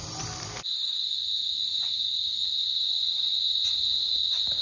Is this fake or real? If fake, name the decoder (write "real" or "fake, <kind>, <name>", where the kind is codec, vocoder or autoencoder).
real